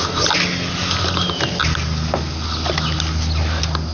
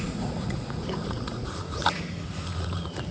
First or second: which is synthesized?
second